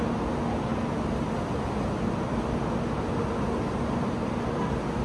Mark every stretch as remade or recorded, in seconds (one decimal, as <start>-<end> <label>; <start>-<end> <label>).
0.0-5.0 recorded